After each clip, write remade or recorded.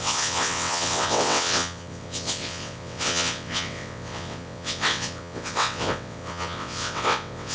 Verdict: remade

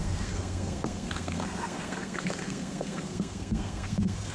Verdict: remade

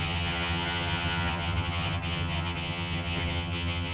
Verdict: remade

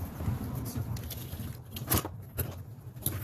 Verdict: recorded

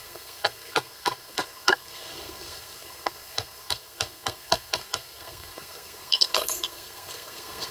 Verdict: remade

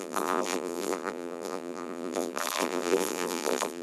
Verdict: remade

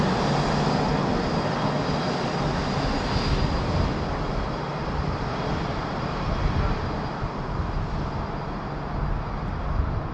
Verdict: recorded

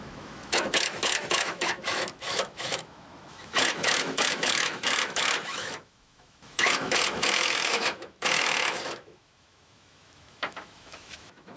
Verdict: remade